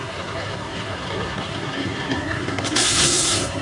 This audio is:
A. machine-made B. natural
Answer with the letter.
A